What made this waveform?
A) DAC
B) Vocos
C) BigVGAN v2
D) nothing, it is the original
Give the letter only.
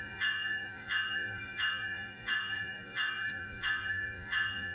B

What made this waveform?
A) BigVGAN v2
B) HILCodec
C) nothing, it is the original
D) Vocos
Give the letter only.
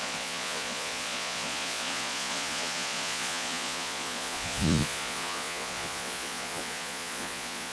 D